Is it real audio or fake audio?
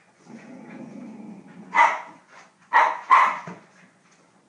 fake